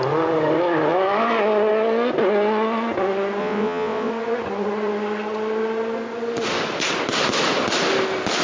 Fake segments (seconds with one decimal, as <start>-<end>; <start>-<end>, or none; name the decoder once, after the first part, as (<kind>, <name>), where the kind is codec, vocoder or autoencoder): 3.4-4.1 (vocoder, WaveNeXt)